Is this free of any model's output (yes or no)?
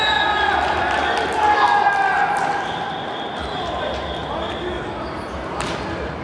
yes